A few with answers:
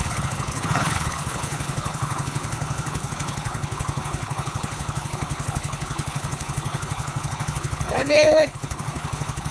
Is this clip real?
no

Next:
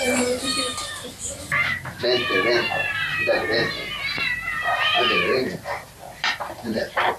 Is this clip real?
no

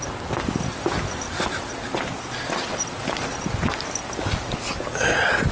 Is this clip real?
yes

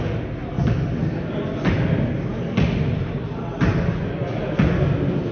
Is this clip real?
yes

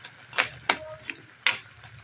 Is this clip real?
yes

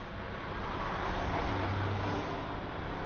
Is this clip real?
yes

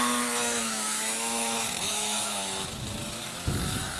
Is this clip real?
no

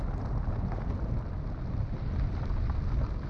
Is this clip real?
yes